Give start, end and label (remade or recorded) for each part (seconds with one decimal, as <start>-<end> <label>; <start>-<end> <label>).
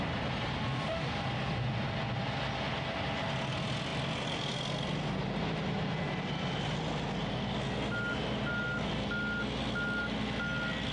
0.0-10.9 recorded